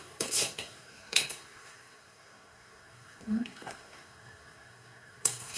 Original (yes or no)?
no